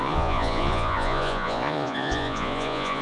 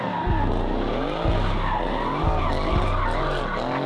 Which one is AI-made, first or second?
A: first